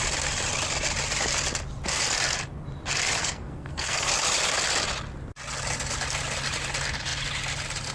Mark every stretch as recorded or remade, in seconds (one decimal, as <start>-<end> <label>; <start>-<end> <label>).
0.0-3.2 recorded; 3.2-4.1 remade; 4.1-7.9 recorded